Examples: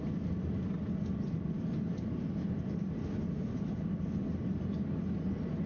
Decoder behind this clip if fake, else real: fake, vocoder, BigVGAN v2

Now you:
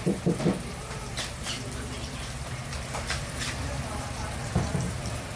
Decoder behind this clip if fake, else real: fake, vocoder, BigVGAN v2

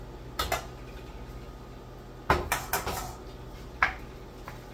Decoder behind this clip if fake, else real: real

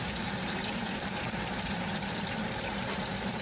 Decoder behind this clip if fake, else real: fake, vocoder, BigVGAN v2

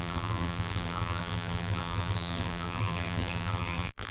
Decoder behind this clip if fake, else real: fake, vocoder, BigVGAN v2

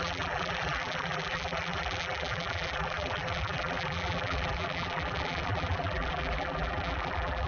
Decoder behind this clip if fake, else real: fake, vocoder, BigVGAN v2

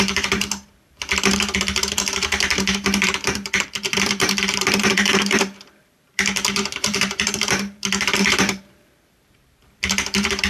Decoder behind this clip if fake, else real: fake, vocoder, BigVGAN v2